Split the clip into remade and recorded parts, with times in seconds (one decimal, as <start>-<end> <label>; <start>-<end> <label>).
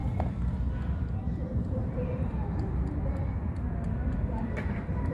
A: 0.0-1.3 recorded; 1.3-1.8 remade; 1.8-4.2 recorded; 4.2-5.1 remade